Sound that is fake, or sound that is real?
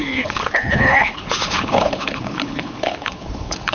fake